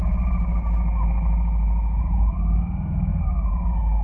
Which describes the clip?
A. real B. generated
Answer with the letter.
A